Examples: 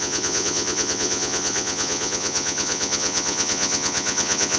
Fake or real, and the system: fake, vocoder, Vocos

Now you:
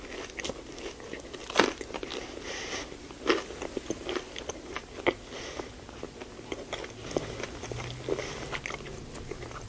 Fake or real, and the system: real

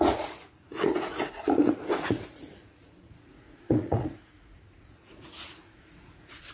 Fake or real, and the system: fake, vocoder, Vocos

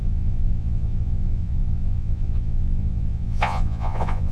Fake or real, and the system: fake, vocoder, Vocos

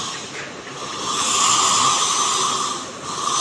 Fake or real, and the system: real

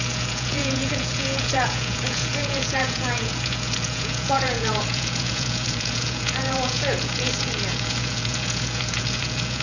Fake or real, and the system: fake, vocoder, Vocos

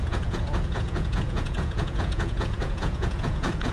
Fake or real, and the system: fake, vocoder, Vocos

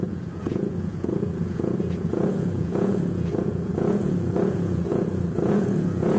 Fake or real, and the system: fake, vocoder, Vocos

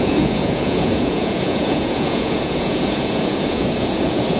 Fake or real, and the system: fake, vocoder, Vocos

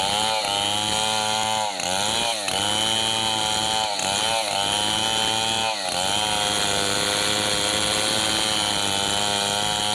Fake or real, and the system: real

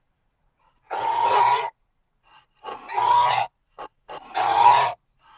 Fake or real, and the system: fake, vocoder, Vocos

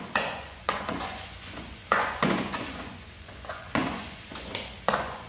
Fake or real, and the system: fake, vocoder, Vocos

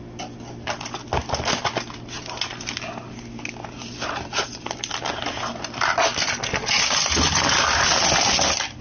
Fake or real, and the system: real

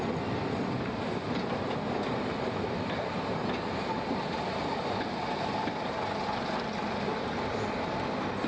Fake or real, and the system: real